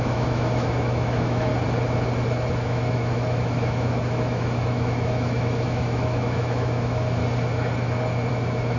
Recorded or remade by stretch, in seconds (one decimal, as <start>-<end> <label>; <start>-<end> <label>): 0.0-1.5 remade; 1.5-2.5 recorded; 2.5-7.2 remade; 7.2-8.3 recorded; 8.3-8.8 remade